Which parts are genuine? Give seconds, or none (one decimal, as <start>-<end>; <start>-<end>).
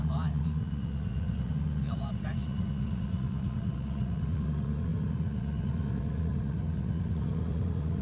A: none